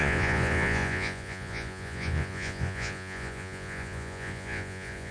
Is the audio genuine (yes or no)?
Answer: no